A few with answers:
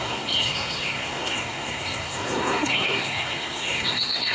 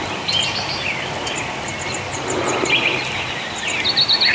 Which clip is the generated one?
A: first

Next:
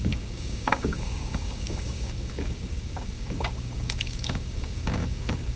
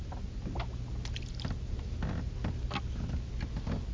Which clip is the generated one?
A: first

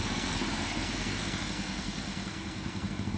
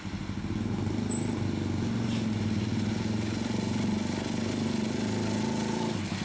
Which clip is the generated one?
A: first